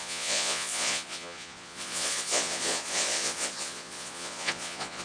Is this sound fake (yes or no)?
yes